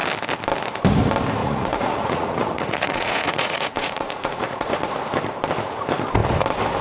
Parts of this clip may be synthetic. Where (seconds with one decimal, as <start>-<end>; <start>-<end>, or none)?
1.4-4.9